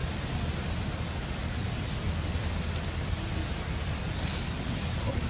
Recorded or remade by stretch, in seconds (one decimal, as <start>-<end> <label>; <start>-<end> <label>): 0.0-5.3 recorded